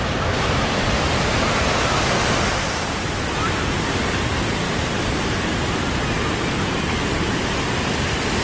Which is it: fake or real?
real